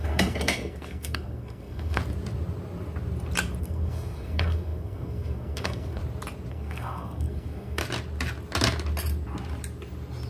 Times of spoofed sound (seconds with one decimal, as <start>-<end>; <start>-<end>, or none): 0.0-2.0; 3.6-6.0; 6.5-7.8